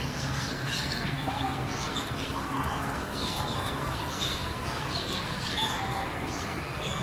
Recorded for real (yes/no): no